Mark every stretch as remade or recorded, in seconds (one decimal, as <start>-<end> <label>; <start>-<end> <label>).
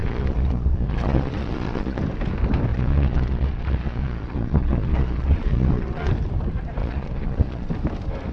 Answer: 0.0-2.0 remade; 2.0-2.7 recorded; 2.7-6.1 remade; 6.1-6.8 recorded; 6.8-7.7 remade; 7.7-8.3 recorded